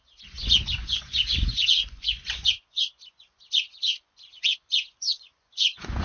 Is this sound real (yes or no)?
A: no